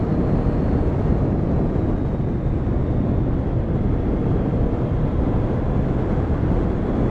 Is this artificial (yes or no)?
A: no